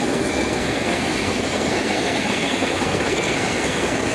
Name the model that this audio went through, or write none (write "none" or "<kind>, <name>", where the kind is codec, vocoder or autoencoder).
codec, SNAC